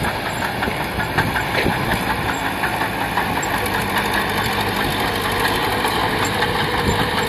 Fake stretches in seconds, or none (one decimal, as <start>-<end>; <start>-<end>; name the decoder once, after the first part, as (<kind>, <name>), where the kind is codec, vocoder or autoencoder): 1.9-4.5 (vocoder, BigVGAN v2); 5.6-6.5